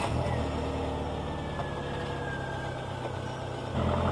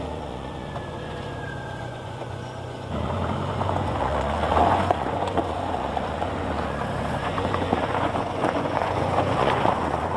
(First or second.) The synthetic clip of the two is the second